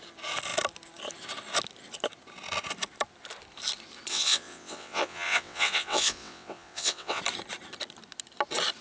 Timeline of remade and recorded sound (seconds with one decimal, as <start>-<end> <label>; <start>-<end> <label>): 0.0-4.1 recorded; 4.1-7.2 remade; 7.2-8.8 recorded